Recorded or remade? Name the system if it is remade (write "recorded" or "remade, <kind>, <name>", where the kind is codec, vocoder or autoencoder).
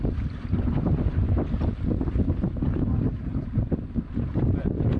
recorded